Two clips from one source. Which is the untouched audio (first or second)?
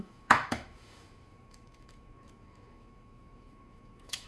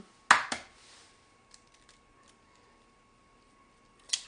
second